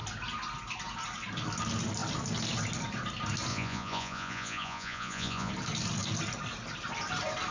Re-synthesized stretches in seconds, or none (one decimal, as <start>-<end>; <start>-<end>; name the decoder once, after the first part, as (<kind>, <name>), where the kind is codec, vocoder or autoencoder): 3.5-5.5 (vocoder, Vocos)